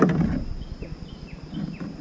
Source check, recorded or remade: recorded